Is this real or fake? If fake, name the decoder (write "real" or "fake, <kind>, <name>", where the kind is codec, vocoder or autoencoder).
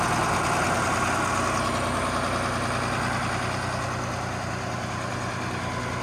real